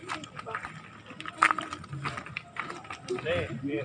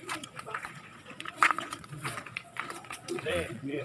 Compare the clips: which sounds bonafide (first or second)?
first